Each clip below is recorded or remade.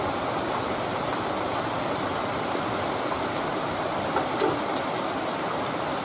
remade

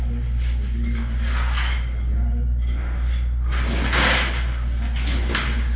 recorded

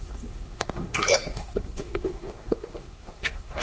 remade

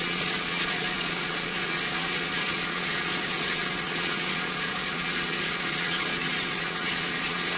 remade